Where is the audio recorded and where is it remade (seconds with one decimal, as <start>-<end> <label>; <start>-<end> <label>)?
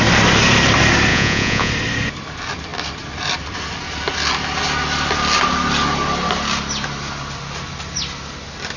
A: 0.0-1.1 recorded; 1.1-1.7 remade; 1.7-8.8 recorded